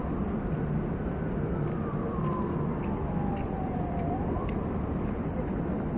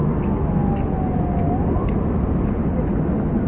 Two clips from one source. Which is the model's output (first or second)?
first